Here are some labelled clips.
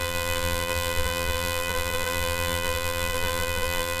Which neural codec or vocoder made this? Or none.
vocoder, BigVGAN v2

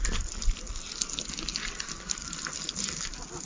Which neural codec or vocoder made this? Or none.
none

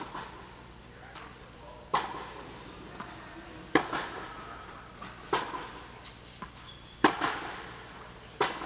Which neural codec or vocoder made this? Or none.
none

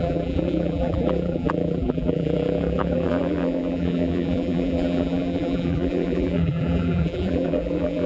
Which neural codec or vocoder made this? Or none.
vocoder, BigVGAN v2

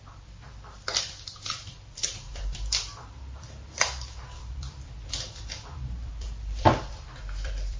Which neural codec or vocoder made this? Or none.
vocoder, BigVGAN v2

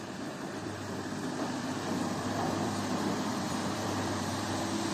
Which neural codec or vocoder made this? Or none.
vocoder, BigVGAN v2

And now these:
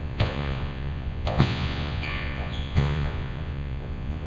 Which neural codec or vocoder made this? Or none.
vocoder, Vocos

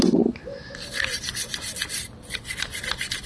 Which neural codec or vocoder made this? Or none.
none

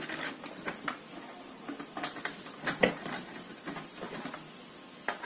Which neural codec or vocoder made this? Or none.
none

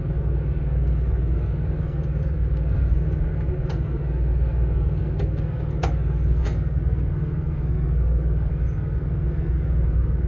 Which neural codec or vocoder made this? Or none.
codec, SNAC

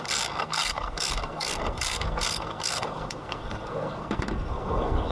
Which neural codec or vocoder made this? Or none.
codec, SNAC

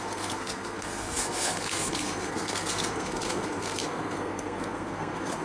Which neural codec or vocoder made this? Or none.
codec, SNAC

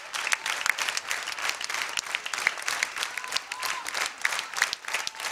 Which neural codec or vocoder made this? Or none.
none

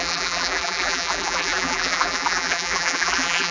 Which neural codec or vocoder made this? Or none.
vocoder, BigVGAN v2